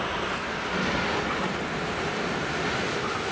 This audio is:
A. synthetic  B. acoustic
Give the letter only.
B